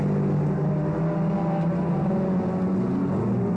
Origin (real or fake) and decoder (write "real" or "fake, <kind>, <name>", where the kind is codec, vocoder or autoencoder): real